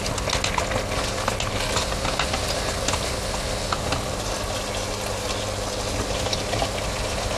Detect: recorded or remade recorded